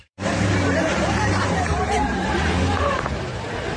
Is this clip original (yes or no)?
no